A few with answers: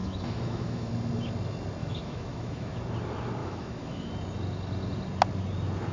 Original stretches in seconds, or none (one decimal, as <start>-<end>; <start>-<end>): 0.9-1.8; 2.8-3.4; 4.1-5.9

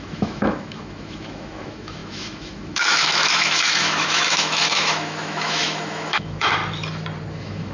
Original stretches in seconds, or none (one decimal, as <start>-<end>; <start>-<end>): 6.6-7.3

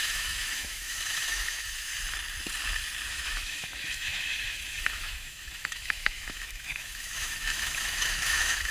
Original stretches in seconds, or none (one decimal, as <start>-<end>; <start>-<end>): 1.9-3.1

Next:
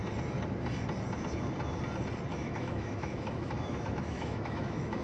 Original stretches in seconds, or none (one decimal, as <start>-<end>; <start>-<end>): 0.0-2.3

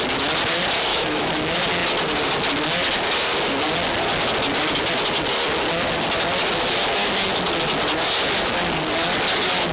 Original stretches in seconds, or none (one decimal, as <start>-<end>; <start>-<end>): 0.0-0.9; 1.4-9.7